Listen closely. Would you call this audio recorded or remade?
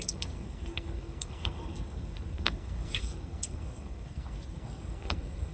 remade